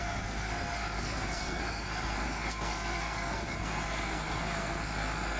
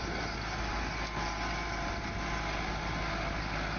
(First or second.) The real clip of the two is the second